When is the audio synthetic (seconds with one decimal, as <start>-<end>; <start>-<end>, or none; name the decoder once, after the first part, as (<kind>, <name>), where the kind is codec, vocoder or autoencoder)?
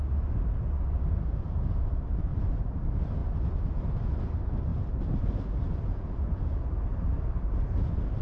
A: 2.3-2.8 (vocoder, BigVGAN v2); 4.7-6.2